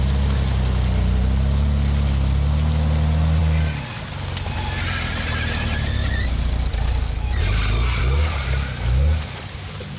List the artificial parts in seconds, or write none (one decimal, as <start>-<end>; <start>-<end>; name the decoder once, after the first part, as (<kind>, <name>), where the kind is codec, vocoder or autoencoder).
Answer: none